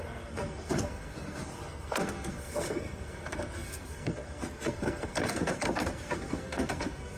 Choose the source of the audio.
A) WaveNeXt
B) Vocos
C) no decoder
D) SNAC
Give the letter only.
D